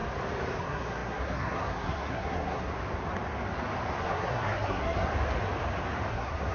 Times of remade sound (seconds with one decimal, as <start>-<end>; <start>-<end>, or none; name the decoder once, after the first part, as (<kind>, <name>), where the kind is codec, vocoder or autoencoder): 0.6-2.7 (codec, SNAC); 4.0-5.1; 6.1-6.5